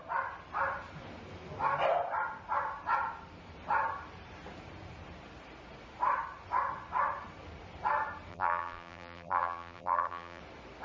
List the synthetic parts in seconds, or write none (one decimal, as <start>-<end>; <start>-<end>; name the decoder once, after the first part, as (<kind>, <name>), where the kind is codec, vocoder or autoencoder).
8.3-10.4 (vocoder, BigVGAN v2)